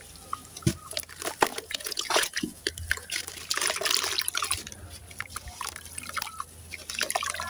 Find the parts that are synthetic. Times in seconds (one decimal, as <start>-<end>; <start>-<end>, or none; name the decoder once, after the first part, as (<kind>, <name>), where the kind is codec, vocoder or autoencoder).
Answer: 1.5-2.6 (vocoder, Vocos)

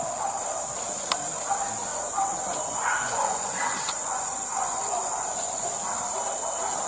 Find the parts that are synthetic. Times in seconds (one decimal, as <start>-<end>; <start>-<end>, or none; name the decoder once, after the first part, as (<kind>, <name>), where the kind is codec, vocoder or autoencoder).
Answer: 1.9-5.7 (vocoder, Vocos)

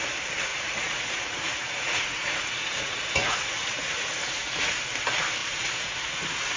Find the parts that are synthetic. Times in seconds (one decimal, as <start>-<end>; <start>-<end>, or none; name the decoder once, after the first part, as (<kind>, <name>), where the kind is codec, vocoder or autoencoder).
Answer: 0.5-4.5 (vocoder, Vocos); 5.4-6.6

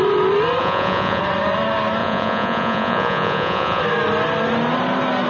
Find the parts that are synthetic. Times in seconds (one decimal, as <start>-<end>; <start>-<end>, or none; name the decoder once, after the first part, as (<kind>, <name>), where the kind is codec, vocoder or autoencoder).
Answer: 0.6-1.2 (vocoder, Vocos); 2.0-3.8

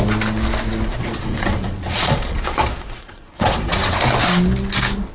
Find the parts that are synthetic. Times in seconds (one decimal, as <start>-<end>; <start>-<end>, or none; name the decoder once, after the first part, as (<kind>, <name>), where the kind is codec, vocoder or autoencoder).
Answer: 0.9-4.0 (vocoder, Vocos)